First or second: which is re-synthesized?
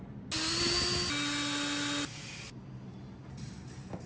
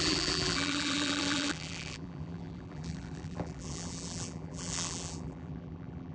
second